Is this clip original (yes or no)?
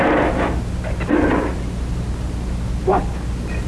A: yes